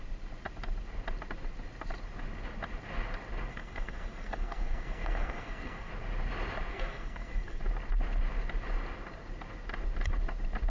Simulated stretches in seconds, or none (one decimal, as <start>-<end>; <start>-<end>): 3.5-5.9; 6.7-7.6